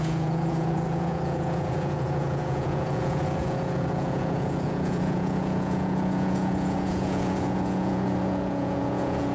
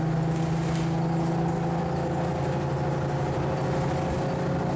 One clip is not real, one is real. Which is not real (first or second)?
first